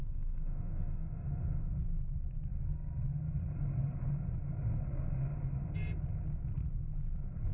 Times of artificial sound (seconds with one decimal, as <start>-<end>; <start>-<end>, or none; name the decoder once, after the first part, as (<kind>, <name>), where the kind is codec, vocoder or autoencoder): 0.0-1.7 (autoencoder, DAC-VAE)